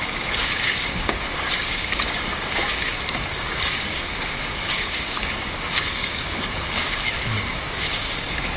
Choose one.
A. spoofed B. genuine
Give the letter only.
A